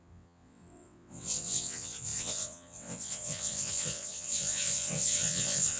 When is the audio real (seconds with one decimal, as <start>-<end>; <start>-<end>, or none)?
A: none